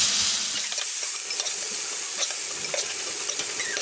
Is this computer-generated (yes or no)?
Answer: no